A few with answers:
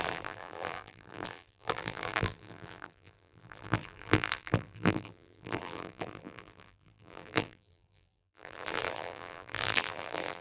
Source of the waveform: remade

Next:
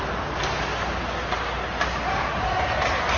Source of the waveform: recorded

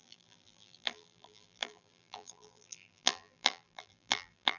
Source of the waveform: remade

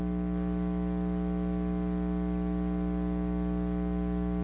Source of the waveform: recorded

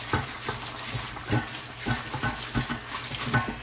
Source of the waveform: recorded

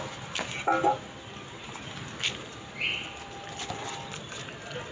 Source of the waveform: recorded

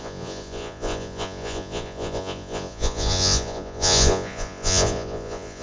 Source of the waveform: remade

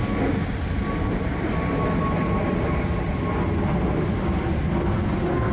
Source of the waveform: recorded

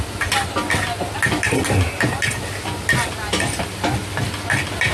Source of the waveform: recorded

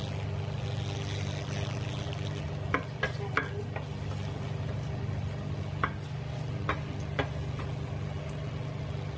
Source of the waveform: recorded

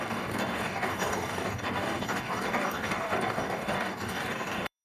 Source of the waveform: remade